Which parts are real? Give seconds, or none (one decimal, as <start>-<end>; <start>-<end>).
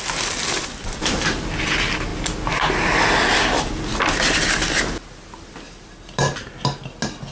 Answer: 0.0-7.3